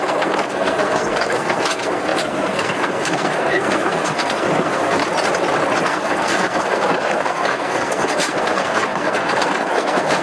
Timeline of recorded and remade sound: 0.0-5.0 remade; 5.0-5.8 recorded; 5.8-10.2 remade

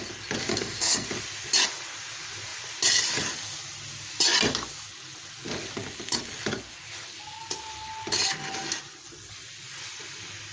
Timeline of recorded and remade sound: 0.0-0.5 recorded; 0.5-1.1 remade; 1.1-10.5 recorded

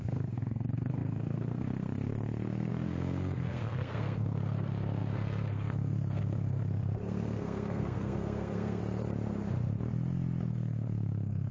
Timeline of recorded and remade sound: 0.0-8.8 remade; 8.8-10.5 recorded; 10.5-11.5 remade

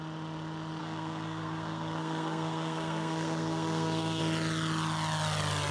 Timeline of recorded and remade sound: 0.0-0.8 recorded; 0.8-4.2 remade; 4.2-5.7 recorded

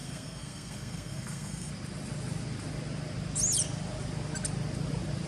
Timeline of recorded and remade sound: 0.0-1.7 remade; 1.7-5.3 recorded

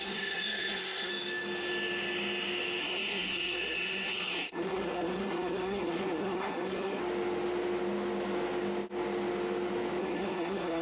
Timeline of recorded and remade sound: 0.0-1.1 remade; 1.1-2.8 recorded; 2.8-7.0 remade; 7.0-10.0 recorded; 10.0-10.8 remade

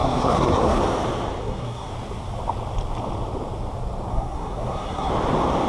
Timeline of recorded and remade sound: 0.0-0.8 remade; 0.8-1.4 recorded; 1.4-1.9 remade; 1.9-4.1 recorded; 4.1-5.1 remade; 5.1-5.7 recorded

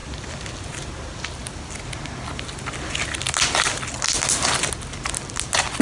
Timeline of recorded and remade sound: 0.0-5.8 recorded